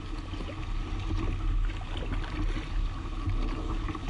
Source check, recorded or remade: recorded